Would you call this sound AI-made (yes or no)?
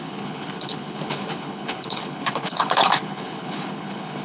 yes